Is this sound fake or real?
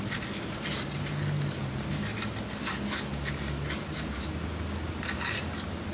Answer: real